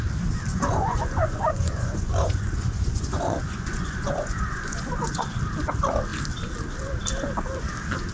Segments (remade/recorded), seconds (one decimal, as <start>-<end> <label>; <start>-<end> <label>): 0.0-0.5 recorded; 0.5-5.4 remade; 5.4-8.1 recorded